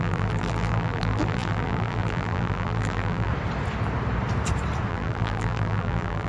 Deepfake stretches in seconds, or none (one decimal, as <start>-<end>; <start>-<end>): 0.0-3.3; 4.9-6.3